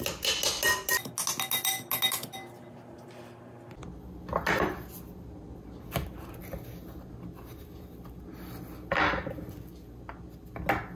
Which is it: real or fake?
real